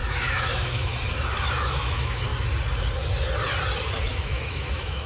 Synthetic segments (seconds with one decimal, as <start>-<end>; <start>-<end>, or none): 0.0-0.9; 1.4-2.3; 4.0-5.1